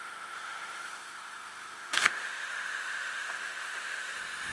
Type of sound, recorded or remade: remade